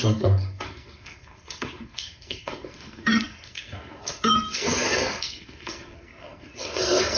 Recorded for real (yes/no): no